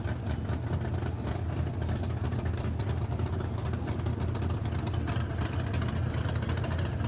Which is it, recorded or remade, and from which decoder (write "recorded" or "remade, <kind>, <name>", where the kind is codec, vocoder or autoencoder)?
recorded